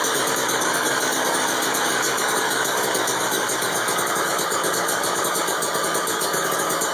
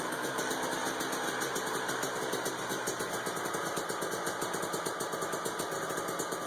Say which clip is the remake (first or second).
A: first